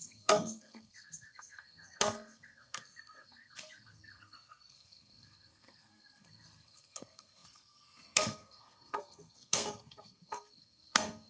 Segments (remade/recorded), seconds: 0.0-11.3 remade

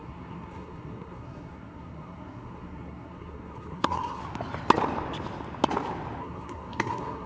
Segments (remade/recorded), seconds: 0.0-4.2 remade; 4.2-6.2 recorded; 6.2-7.3 remade

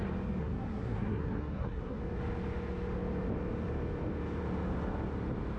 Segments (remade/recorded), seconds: 0.0-0.4 recorded; 0.4-2.0 remade; 2.0-5.6 recorded